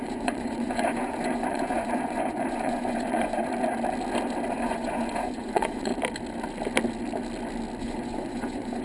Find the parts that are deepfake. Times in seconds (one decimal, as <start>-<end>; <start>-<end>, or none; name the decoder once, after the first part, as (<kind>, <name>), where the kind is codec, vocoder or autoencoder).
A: 0.0-3.4 (vocoder, Vocos); 4.5-5.9; 7.8-8.8